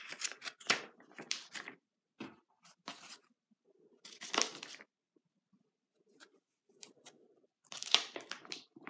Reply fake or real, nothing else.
fake